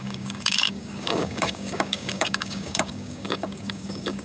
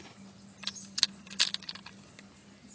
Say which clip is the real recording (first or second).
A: second